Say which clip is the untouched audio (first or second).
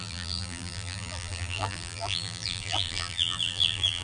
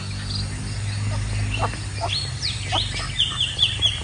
second